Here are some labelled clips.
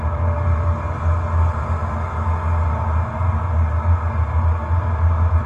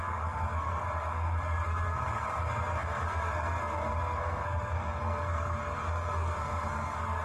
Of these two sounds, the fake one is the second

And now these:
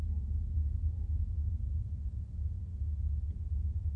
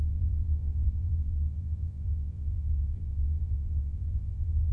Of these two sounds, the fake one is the second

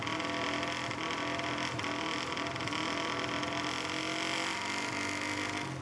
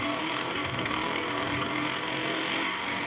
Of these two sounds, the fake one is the second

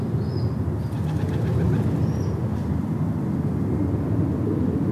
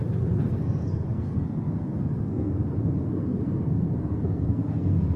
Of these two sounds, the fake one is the second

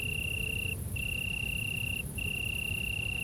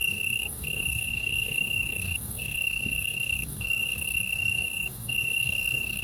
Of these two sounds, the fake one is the second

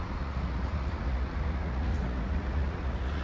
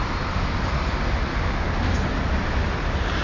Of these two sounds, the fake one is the first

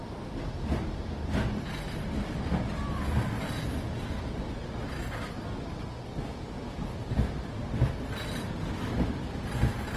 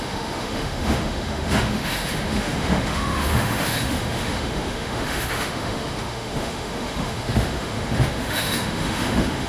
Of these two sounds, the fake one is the second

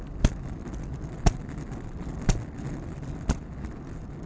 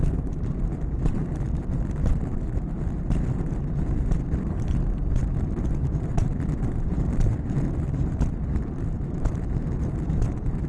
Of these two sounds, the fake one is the second